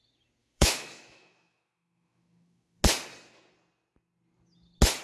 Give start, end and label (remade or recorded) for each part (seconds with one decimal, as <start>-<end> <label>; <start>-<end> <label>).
0.0-0.4 recorded; 0.4-2.8 remade; 2.8-5.0 recorded

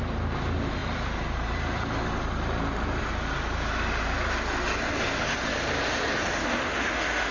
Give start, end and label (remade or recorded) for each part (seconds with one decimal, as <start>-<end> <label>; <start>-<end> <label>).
0.0-6.4 recorded; 6.4-7.3 remade

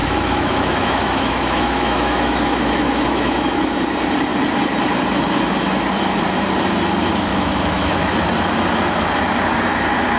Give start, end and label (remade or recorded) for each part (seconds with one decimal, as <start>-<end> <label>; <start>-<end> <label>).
0.0-3.6 remade; 3.6-7.3 recorded; 7.3-8.1 remade; 8.1-10.2 recorded

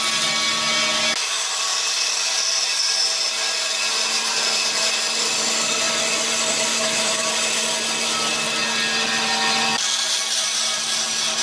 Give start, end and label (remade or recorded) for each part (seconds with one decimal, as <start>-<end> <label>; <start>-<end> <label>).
0.0-6.7 recorded; 6.7-7.3 remade; 7.3-11.4 recorded

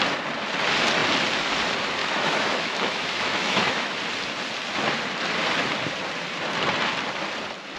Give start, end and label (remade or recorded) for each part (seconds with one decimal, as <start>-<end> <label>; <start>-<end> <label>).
0.0-2.0 recorded; 2.0-4.0 remade; 4.0-7.8 recorded